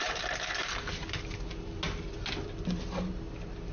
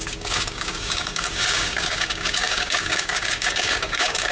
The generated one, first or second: second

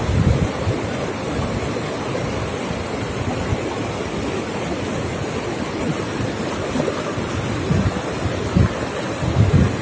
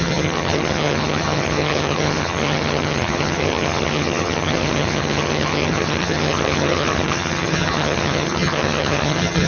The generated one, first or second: second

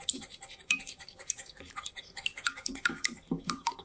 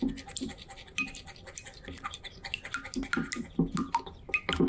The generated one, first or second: first